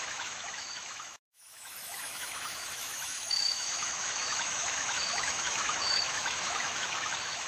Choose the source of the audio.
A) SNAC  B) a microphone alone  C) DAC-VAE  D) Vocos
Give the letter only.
C